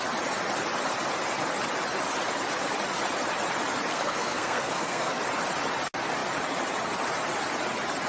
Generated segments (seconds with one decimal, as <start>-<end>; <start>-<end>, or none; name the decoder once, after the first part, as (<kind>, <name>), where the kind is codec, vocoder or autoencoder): 3.9-5.2 (codec, SNAC)